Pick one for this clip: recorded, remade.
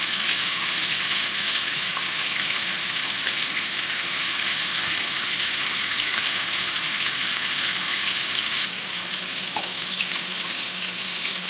remade